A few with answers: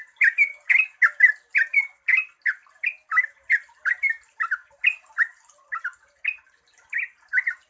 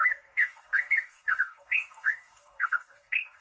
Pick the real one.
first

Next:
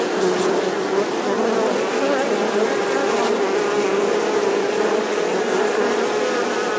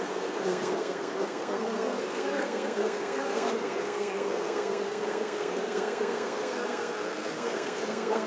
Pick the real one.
first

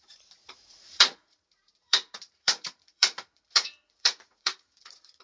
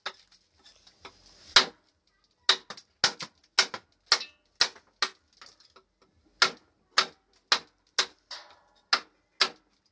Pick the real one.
second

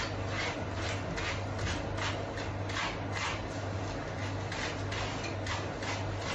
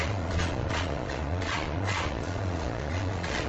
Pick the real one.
first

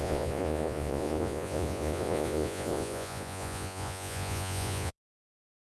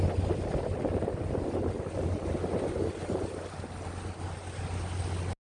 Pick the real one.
second